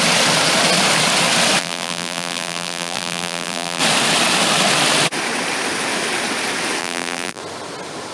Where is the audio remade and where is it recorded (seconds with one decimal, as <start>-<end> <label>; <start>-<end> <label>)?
0.0-1.6 recorded; 1.6-3.8 remade; 3.8-6.8 recorded; 6.8-7.4 remade; 7.4-8.1 recorded